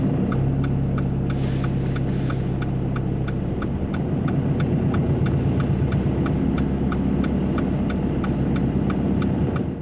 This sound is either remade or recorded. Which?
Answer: recorded